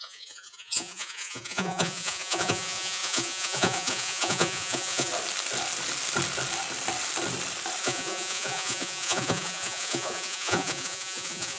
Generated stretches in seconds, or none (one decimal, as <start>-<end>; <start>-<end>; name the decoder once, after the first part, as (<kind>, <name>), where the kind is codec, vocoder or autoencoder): 0.0-5.1 (vocoder, Vocos); 7.8-11.6